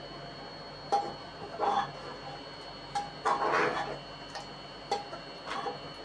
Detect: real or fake real